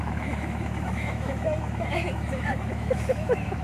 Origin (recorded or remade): remade